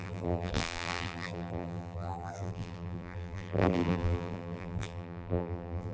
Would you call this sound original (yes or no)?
no